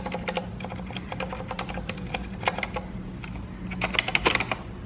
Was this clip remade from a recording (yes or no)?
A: no